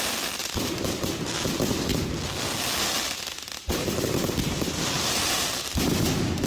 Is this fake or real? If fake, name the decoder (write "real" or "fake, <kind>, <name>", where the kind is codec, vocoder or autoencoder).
real